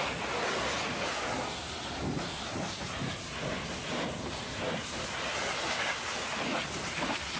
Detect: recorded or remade recorded